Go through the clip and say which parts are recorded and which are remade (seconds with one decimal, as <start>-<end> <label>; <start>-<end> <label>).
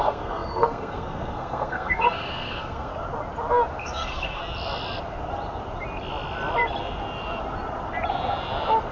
0.0-2.9 remade; 2.9-3.8 recorded; 3.8-4.4 remade; 4.4-8.9 recorded